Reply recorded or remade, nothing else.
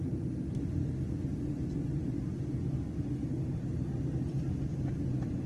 recorded